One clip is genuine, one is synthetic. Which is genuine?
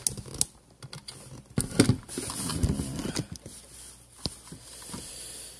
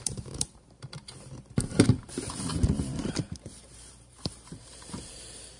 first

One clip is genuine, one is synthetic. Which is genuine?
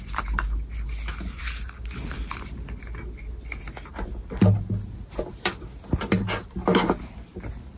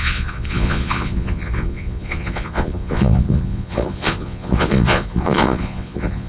first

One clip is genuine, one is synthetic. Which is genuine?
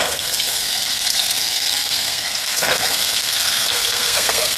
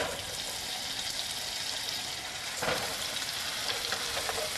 second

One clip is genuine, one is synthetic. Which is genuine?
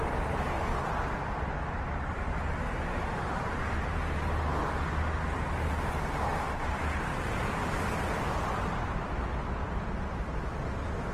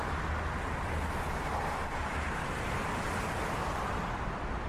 first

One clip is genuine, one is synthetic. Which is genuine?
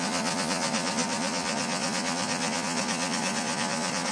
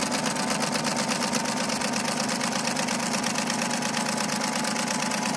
second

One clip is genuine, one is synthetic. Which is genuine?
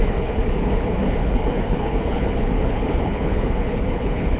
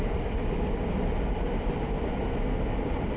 second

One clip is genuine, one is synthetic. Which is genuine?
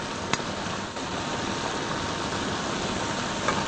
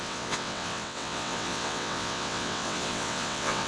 first